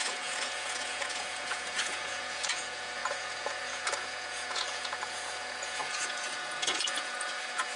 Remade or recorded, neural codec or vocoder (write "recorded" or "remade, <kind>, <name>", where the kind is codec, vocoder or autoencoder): remade, vocoder, Vocos